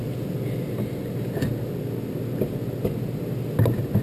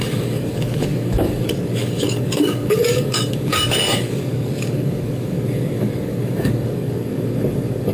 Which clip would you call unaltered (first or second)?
first